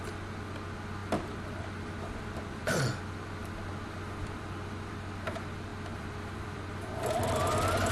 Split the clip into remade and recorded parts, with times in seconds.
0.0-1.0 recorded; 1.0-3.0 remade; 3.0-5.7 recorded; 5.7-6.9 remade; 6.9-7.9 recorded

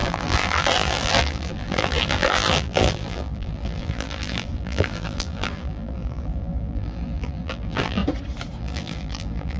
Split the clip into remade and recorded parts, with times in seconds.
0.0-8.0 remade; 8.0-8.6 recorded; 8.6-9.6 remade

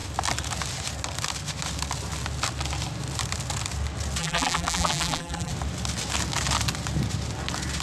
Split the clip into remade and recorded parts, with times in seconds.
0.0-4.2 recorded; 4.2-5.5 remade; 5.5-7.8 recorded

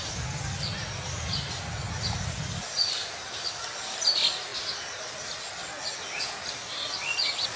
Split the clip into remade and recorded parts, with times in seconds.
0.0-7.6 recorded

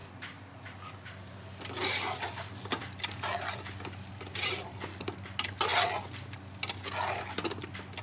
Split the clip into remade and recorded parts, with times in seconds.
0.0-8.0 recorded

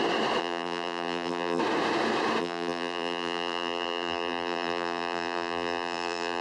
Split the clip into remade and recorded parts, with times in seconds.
0.0-0.4 recorded; 0.4-1.6 remade; 1.6-2.4 recorded; 2.4-6.4 remade